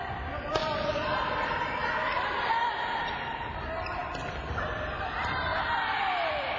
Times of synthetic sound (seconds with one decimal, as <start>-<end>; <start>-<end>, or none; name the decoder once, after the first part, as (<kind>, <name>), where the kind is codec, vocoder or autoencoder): 0.0-1.8 (vocoder, BigVGAN v2); 3.3-6.6

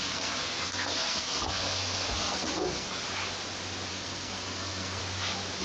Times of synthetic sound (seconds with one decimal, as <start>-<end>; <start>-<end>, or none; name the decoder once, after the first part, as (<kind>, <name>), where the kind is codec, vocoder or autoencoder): 0.0-3.0 (codec, SNAC); 3.9-5.0